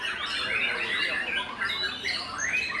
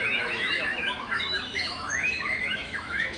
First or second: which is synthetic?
second